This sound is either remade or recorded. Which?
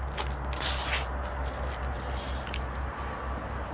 recorded